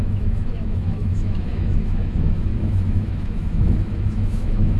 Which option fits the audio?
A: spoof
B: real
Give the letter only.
A